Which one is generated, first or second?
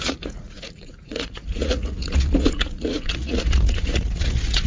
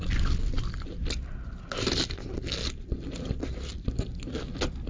first